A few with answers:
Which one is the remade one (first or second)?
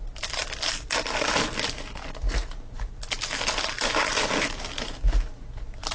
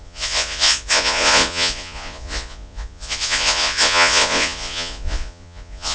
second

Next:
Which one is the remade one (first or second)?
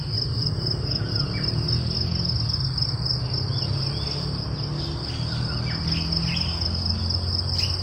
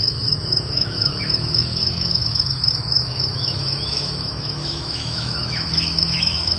second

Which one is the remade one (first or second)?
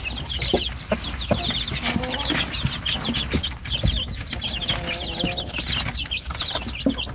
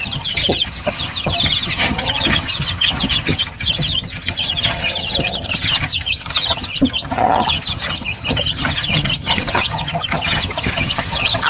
second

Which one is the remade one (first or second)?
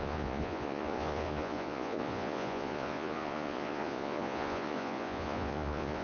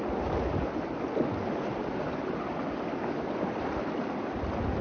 first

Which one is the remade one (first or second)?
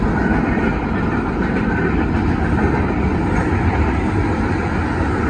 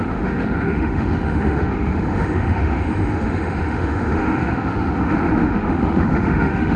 second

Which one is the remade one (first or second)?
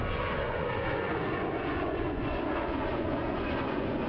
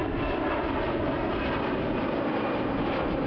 first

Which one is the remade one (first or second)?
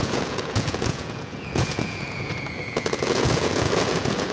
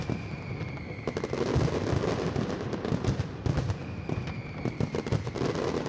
first